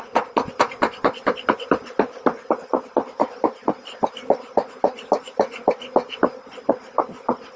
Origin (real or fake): real